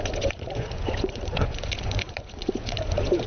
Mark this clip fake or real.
fake